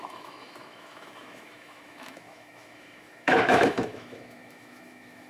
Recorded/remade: remade